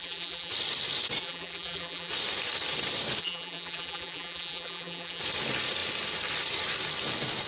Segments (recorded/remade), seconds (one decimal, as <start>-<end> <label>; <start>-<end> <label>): 0.0-0.5 remade; 0.5-1.2 recorded; 1.2-2.1 remade; 2.1-3.2 recorded; 3.2-5.2 remade; 5.2-7.5 recorded